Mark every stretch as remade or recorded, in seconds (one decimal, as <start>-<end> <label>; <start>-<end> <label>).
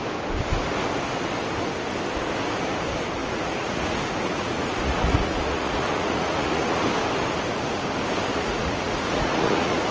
0.0-3.2 recorded; 3.2-6.8 remade; 6.8-8.3 recorded; 8.3-9.9 remade